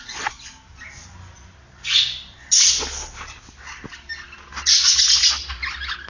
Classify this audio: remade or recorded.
recorded